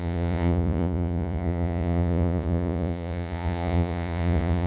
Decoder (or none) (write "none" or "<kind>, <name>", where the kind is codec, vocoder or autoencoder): vocoder, Vocos